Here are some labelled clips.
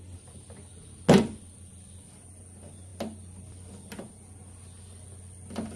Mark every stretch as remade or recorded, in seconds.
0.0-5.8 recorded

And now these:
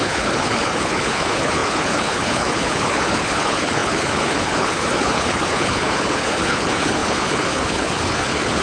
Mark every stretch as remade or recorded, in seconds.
0.0-8.6 remade

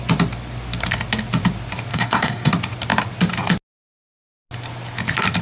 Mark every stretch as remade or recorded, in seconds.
0.0-1.9 recorded; 1.9-2.5 remade; 2.5-5.4 recorded

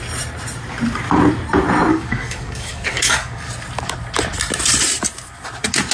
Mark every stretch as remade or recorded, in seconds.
0.0-1.9 recorded; 1.9-3.5 remade; 3.5-5.9 recorded